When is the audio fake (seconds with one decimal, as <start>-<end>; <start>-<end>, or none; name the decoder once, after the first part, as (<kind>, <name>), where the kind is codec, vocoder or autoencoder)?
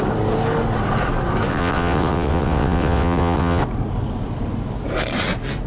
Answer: 1.5-3.6 (vocoder, WaveNeXt)